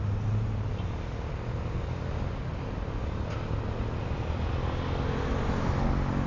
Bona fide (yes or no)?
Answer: yes